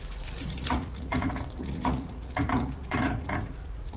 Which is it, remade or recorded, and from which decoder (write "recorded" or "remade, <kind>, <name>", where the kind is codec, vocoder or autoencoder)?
remade, vocoder, Vocos